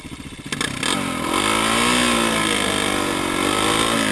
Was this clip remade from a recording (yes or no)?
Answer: no